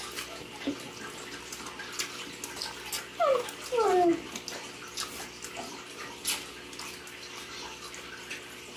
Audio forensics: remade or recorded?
recorded